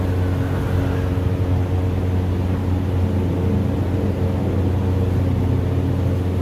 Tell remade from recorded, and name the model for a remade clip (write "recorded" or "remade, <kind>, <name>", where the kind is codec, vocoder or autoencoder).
recorded